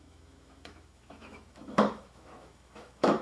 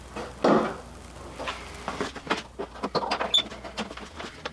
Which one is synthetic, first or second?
first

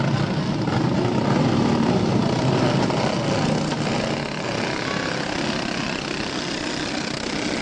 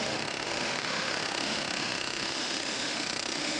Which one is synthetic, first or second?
second